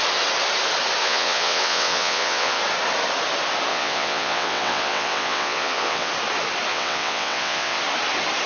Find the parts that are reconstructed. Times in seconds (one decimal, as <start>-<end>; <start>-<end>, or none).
1.0-2.6; 3.7-6.1; 6.7-7.8